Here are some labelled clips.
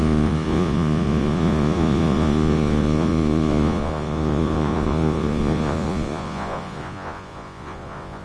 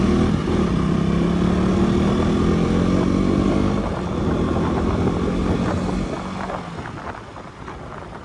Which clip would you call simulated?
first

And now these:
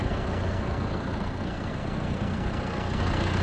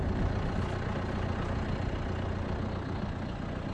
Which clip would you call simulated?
first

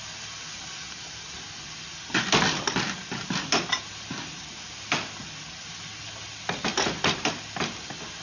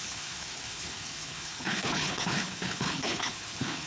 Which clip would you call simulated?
second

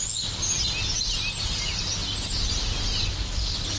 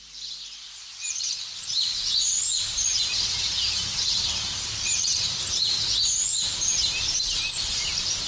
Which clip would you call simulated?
second